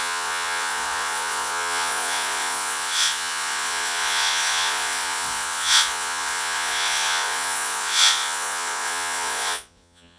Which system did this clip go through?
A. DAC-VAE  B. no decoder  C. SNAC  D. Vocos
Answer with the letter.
D